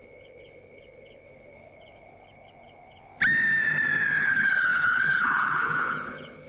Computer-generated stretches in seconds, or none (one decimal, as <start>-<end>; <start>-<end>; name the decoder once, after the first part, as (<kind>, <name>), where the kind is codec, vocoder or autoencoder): 0.0-3.1 (codec, HILCodec); 4.2-6.5

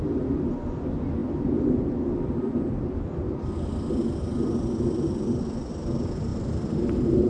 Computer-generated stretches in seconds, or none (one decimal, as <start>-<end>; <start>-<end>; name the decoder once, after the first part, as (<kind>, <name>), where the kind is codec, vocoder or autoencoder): none